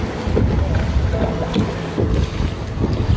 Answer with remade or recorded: recorded